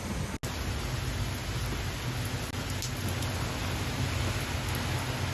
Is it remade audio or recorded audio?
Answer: recorded